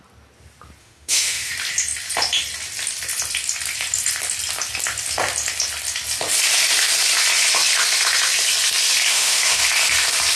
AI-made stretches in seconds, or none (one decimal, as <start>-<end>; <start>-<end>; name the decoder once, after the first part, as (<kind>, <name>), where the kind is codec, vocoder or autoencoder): 0.8-1.5 (autoencoder, DAC-VAE); 9.1-9.6